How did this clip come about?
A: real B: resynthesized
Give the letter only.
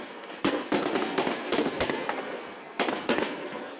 B